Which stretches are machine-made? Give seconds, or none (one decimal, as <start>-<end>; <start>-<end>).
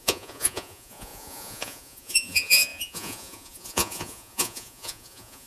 0.0-5.5